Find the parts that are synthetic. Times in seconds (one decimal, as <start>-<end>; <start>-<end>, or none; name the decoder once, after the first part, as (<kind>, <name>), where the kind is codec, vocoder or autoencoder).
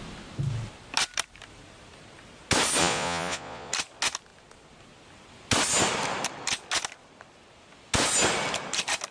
2.8-3.7 (vocoder, Vocos)